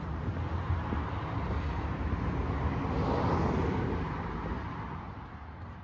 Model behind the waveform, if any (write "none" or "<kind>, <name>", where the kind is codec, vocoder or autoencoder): none